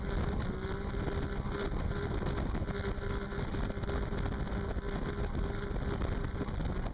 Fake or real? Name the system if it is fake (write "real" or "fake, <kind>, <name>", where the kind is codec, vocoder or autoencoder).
real